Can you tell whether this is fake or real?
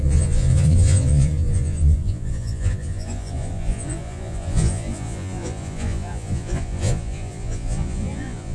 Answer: fake